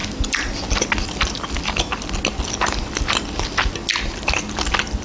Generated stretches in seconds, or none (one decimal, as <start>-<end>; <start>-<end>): none